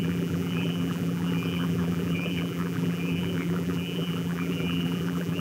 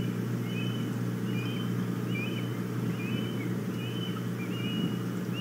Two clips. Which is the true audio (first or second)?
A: second